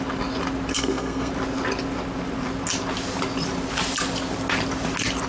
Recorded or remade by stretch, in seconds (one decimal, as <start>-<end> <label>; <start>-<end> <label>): 0.0-0.7 recorded; 0.7-1.3 remade; 1.3-5.3 recorded